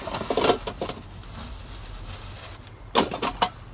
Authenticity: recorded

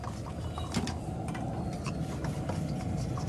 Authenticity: recorded